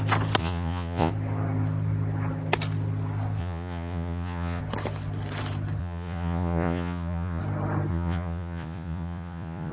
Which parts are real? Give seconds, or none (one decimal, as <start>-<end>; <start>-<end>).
0.0-0.4; 1.1-3.4; 4.6-5.8; 7.4-7.9